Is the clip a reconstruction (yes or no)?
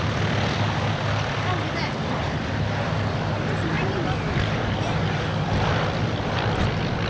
no